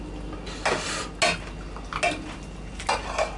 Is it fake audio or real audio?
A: real